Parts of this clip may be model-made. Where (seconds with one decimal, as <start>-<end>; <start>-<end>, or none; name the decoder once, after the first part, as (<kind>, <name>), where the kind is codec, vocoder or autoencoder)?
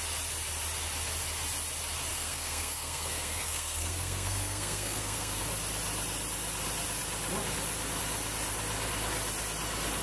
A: 2.1-5.4 (codec, SNAC)